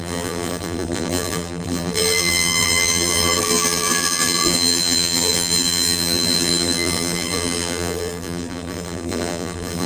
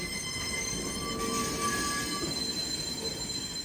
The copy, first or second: first